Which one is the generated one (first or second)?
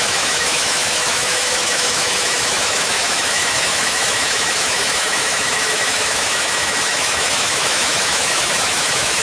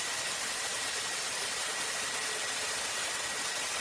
first